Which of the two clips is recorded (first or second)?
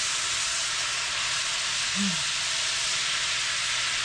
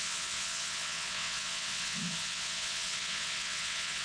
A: first